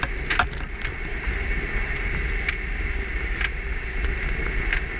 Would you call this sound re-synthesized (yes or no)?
no